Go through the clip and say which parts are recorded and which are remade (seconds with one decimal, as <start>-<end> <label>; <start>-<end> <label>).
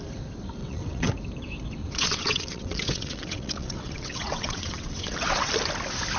0.0-0.6 recorded; 0.6-1.1 remade; 1.1-1.8 recorded; 1.8-5.5 remade; 5.5-6.2 recorded